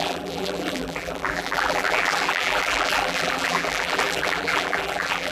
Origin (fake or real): fake